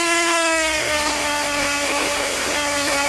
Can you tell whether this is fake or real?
fake